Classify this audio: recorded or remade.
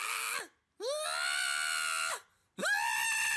recorded